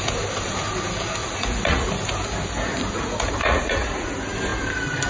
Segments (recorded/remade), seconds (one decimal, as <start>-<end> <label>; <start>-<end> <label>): 0.0-1.2 recorded; 1.2-1.9 remade; 1.9-3.4 recorded; 3.4-4.1 remade; 4.1-5.1 recorded